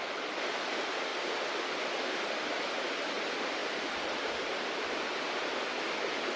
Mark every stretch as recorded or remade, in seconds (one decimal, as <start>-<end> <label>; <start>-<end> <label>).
0.0-6.4 recorded